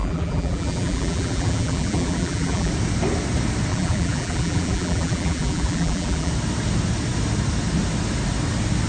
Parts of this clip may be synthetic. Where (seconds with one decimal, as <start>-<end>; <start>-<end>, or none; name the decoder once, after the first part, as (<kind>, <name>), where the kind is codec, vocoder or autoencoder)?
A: 0.0-2.7 (vocoder, BigVGAN v2); 3.7-6.3